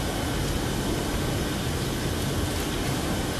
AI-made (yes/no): yes